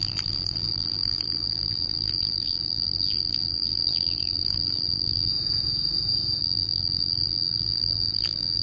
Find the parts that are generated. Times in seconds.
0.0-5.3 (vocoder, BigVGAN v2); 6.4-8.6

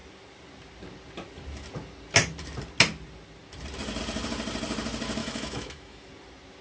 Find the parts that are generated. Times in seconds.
5.2-6.1 (autoencoder, DAC-VAE)

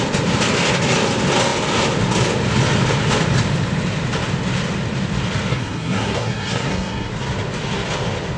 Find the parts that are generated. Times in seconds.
5.5-7.1 (codec, SNAC)

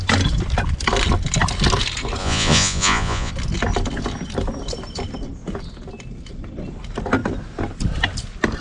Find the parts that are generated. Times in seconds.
2.2-3.3 (vocoder, Vocos)

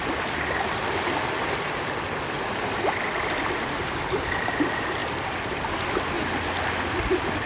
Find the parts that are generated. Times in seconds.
none

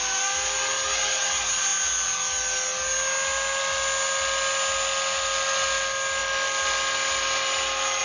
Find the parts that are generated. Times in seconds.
none

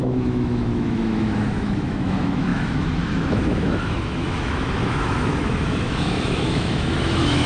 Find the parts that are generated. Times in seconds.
0.0-7.5 (autoencoder, DAC-VAE)

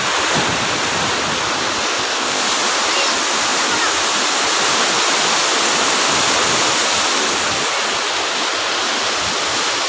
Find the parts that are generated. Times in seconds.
1.9-2.4 (codec, ZipCodec)